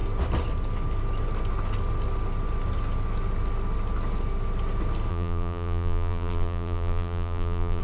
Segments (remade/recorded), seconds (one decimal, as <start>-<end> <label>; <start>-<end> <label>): 0.0-5.1 recorded; 5.1-7.8 remade